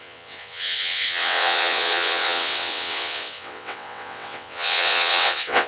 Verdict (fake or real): fake